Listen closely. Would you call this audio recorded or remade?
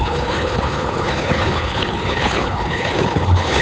remade